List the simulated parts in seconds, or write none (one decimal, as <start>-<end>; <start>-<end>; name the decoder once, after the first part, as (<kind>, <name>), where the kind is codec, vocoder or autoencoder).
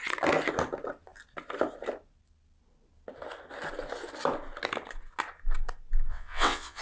6.1-6.8 (vocoder, WaveNeXt)